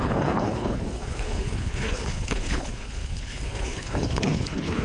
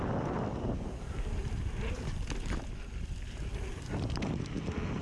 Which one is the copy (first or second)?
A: first